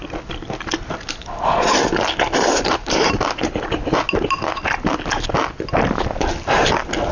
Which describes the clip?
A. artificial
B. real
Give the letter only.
B